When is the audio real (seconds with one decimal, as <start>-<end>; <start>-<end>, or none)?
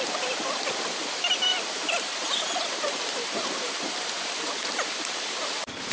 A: 0.0-1.5; 4.5-5.9